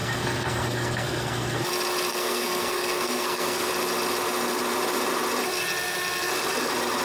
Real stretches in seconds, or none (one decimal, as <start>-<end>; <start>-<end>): 1.7-2.1; 3.7-7.0